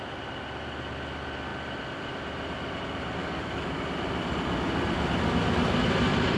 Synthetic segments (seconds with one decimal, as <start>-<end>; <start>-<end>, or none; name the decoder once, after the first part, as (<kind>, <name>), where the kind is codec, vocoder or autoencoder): 3.2-3.8 (codec, DAC)